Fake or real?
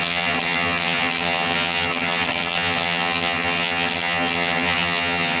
fake